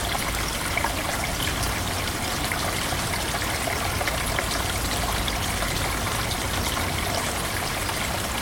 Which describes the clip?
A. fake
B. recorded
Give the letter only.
B